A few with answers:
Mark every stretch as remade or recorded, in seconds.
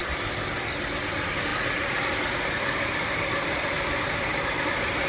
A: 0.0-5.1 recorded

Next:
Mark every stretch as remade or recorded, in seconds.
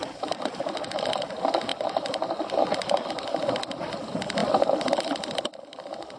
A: 0.0-1.7 recorded; 1.7-2.6 remade; 2.6-6.2 recorded